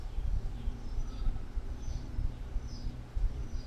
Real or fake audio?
fake